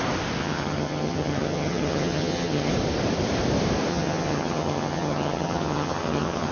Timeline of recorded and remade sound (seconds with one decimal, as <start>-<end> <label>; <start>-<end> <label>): 0.0-0.4 recorded; 0.4-2.7 remade; 2.7-3.9 recorded; 3.9-6.5 remade

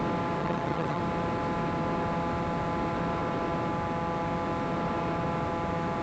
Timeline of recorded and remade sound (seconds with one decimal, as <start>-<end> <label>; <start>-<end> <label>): 0.0-0.4 recorded; 0.4-1.0 remade; 1.0-6.0 recorded